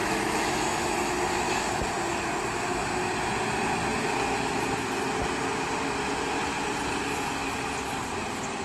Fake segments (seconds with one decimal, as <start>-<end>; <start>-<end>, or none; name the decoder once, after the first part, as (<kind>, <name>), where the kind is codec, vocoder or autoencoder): 0.0-1.9 (autoencoder, DAC-VAE)